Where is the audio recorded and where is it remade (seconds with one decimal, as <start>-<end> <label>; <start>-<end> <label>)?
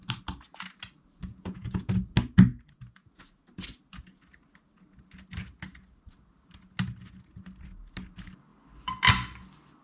0.0-1.3 recorded; 1.3-1.9 remade; 1.9-2.5 recorded; 2.5-3.1 remade; 3.1-9.8 recorded